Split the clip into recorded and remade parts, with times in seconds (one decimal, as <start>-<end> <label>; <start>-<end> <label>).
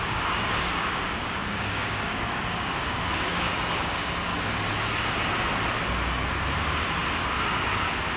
0.0-4.3 remade; 4.3-8.2 recorded